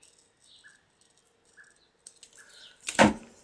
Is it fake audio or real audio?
real